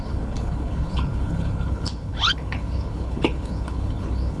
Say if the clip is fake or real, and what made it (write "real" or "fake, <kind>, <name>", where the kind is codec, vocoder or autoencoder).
fake, codec, HILCodec